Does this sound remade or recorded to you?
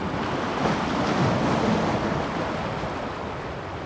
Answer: recorded